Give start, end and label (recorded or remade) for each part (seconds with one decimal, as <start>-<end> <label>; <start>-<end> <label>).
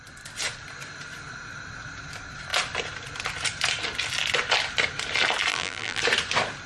0.0-5.5 recorded; 5.5-6.0 remade; 6.0-6.7 recorded